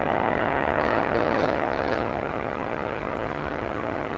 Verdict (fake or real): fake